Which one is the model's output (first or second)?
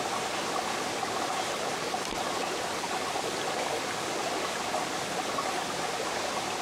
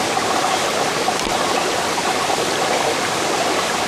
second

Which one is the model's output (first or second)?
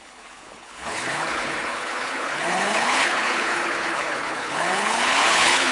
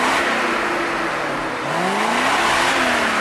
first